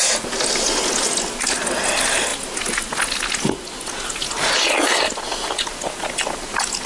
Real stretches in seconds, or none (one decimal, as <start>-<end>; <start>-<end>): 0.0-6.9